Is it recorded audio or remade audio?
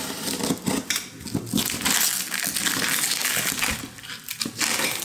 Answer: recorded